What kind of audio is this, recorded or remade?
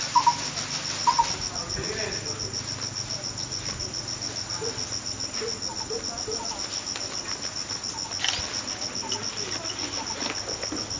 recorded